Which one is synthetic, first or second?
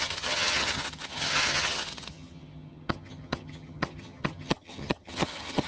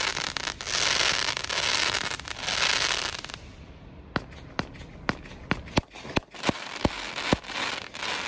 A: first